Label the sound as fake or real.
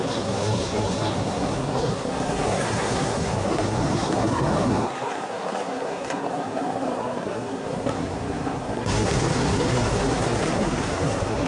fake